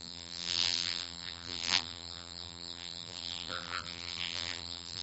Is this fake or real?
fake